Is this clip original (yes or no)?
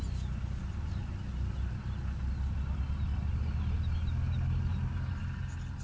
yes